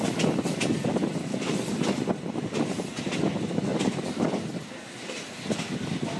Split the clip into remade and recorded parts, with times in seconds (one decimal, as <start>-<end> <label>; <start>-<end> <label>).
0.0-6.2 recorded